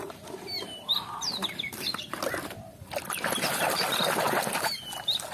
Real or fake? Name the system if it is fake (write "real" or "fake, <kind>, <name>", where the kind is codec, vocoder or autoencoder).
real